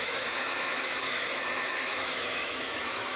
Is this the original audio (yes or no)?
no